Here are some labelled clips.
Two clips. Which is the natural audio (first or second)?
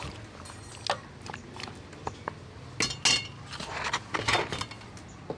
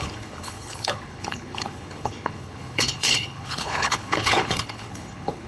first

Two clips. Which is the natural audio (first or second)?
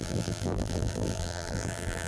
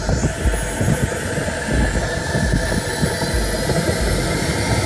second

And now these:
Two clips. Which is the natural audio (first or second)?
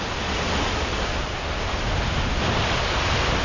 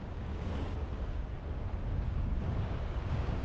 first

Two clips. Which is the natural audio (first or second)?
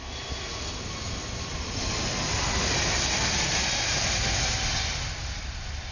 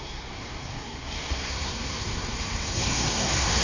first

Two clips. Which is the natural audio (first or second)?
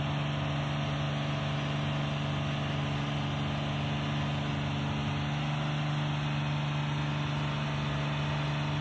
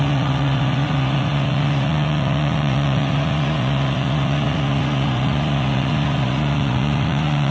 first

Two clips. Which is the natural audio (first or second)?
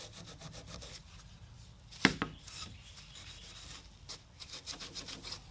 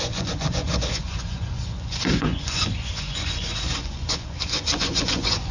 first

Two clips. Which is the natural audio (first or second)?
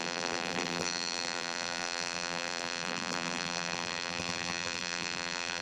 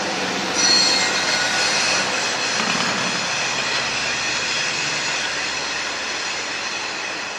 second